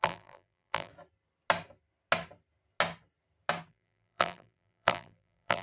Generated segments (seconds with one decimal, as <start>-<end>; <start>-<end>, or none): 0.0-0.9; 3.7-5.6